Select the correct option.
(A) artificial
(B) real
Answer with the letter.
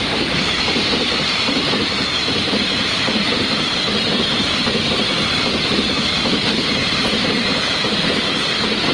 A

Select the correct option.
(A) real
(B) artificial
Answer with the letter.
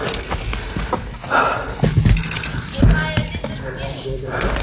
A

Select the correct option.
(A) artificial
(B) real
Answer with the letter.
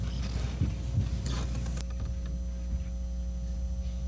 B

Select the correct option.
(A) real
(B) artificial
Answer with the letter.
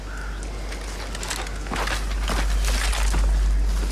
A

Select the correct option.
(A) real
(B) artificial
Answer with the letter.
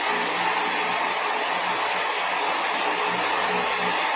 A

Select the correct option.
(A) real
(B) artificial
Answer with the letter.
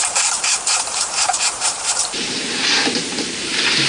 B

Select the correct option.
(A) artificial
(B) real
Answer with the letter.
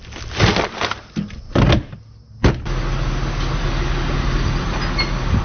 B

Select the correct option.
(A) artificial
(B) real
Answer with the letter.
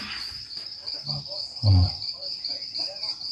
A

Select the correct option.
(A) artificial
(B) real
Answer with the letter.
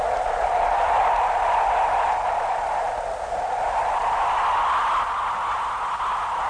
A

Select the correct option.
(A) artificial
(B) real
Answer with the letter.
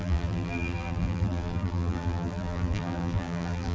A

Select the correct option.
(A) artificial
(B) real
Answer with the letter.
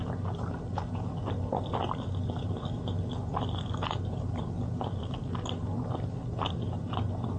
A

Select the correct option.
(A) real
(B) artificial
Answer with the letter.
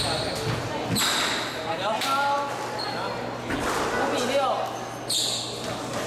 A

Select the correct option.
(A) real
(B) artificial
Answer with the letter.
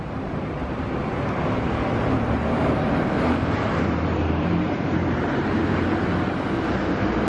B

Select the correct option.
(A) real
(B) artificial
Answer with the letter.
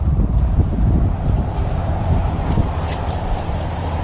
B